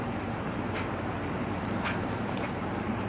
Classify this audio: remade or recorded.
remade